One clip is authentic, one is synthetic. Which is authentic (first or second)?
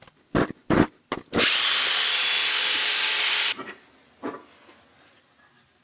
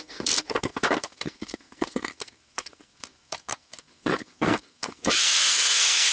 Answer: first